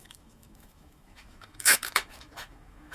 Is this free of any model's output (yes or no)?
no